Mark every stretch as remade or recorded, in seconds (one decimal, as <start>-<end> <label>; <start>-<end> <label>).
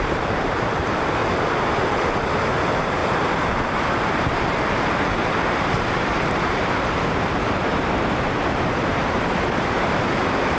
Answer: 0.0-1.2 remade; 1.2-2.2 recorded; 2.2-10.6 remade